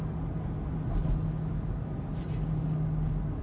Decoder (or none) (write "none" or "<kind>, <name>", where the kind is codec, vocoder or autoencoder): none